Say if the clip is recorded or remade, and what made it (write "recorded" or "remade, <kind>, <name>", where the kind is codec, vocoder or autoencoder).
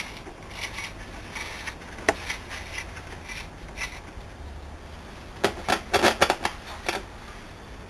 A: recorded